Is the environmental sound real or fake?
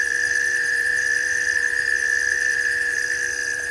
fake